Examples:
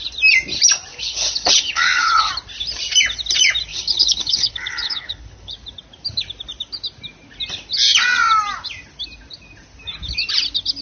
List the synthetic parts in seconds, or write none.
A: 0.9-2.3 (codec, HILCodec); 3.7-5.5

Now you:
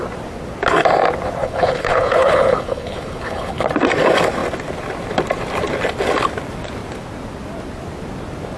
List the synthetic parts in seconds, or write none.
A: 1.4-3.7 (codec, HILCodec)

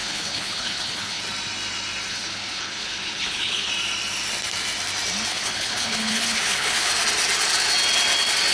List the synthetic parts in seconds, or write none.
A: 0.0-1.2 (codec, HILCodec); 2.1-3.7; 5.3-6.9

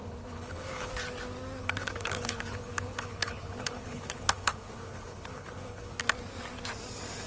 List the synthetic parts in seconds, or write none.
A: 0.0-0.9 (codec, HILCodec); 1.6-6.0

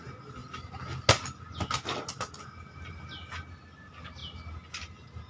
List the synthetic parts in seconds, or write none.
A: none

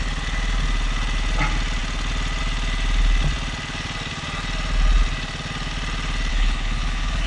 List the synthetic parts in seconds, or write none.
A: 6.3-7.3 (codec, HILCodec)

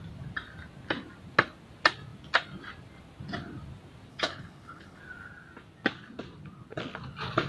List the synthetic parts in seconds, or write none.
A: 4.1-5.0 (codec, HILCodec)